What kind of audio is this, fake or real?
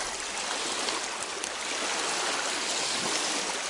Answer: real